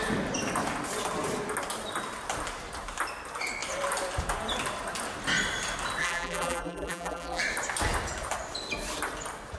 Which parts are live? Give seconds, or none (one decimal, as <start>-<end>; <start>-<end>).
0.0-6.0; 7.4-9.6